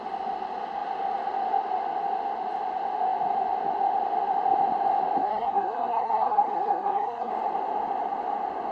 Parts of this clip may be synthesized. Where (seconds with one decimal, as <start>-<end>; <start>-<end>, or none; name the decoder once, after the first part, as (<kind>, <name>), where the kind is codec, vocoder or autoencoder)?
5.2-7.3 (codec, SNAC)